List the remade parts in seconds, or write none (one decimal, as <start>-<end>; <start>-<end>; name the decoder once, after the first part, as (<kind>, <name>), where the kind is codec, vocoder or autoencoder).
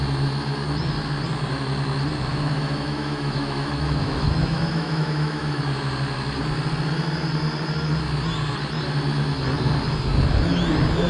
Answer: 2.3-5.6 (autoencoder, DAC-VAE)